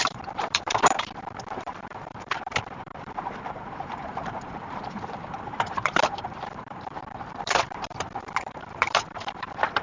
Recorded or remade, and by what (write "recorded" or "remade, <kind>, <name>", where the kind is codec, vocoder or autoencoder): remade, vocoder, BigVGAN v2